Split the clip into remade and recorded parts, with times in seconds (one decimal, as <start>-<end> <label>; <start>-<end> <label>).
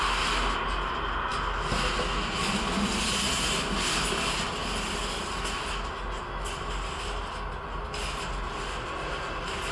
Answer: 0.0-9.7 recorded